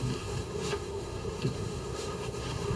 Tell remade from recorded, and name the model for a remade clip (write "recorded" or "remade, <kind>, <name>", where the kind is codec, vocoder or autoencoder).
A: remade, codec, SNAC